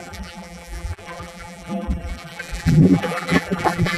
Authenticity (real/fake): fake